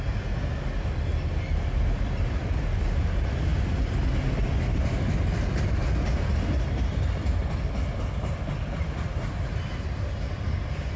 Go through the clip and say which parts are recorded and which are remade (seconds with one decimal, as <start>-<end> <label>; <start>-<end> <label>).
0.0-11.0 recorded